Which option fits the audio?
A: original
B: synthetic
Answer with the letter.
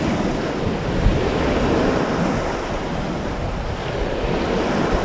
A